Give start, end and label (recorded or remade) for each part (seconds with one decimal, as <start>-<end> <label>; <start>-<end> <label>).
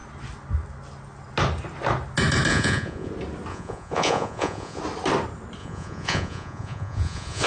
0.0-2.5 recorded; 2.5-3.1 remade; 3.1-3.5 recorded; 3.5-4.8 remade; 4.8-5.6 recorded; 5.6-7.5 remade